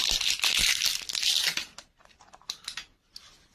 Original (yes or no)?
yes